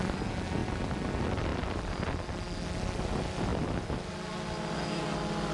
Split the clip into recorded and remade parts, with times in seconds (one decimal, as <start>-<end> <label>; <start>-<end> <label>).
0.0-5.5 recorded